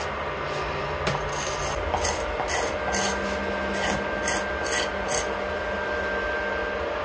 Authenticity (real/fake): real